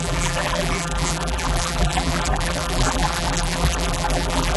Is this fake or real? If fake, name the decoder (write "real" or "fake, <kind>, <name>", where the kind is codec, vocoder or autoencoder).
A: fake, vocoder, BigVGAN v2